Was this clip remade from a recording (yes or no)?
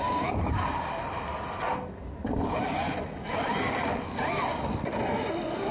no